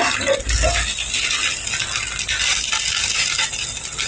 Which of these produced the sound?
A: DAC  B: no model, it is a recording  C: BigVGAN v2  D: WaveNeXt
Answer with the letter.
B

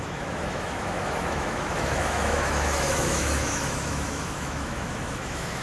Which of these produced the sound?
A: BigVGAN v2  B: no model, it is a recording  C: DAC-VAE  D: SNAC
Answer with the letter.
C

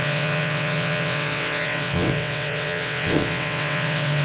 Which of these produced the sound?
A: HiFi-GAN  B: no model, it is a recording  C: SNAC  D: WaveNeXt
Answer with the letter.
D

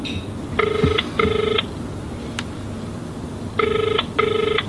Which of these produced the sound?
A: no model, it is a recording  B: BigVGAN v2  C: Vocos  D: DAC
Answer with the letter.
A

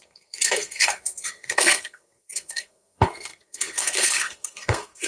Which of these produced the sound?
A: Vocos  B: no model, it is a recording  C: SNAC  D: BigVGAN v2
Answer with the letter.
C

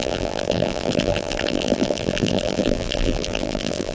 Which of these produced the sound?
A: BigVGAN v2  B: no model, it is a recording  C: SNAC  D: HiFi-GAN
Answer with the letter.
A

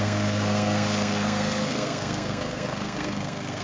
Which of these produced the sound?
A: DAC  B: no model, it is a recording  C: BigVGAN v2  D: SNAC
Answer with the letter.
D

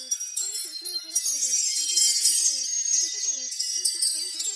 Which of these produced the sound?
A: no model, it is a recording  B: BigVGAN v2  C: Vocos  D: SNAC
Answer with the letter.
D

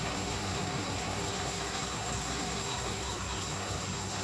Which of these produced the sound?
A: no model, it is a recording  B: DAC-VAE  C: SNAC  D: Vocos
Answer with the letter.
C